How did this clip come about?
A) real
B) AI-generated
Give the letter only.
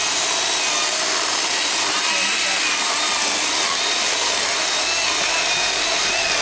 A